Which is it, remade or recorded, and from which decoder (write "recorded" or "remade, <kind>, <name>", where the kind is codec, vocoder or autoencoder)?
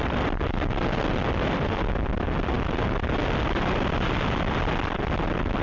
remade, vocoder, BigVGAN v2